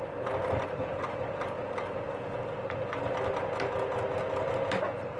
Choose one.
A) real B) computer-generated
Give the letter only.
A